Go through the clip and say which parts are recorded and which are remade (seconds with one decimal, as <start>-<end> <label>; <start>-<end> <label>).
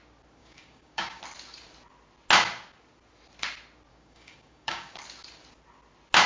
0.0-0.4 recorded; 0.4-1.2 remade; 1.2-3.9 recorded; 3.9-5.0 remade; 5.0-6.3 recorded